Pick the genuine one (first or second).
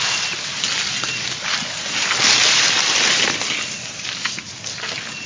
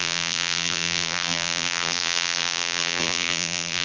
first